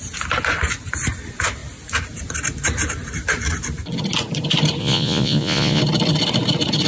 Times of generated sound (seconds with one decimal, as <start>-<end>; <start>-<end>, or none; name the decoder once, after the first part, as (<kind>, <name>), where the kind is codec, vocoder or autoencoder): 4.8-5.8 (vocoder, Vocos)